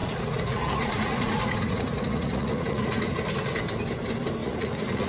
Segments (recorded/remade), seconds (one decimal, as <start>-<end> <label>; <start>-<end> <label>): 0.0-3.1 remade; 3.1-4.4 recorded; 4.4-5.1 remade